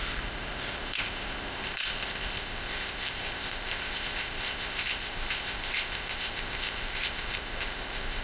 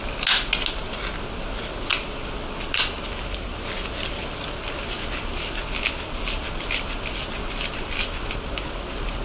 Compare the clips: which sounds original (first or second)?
second